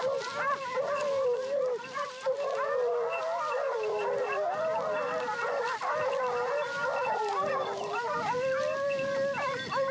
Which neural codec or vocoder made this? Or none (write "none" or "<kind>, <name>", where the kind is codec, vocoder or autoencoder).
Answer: none